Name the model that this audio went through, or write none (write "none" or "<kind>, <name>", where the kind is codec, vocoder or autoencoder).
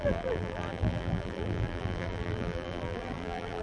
vocoder, BigVGAN v2